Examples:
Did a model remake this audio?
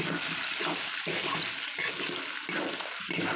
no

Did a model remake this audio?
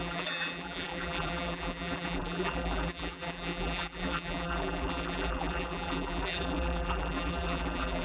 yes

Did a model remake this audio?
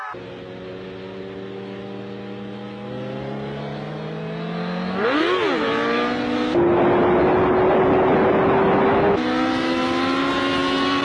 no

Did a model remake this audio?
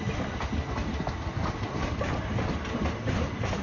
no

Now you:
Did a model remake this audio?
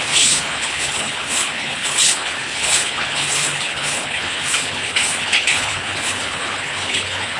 yes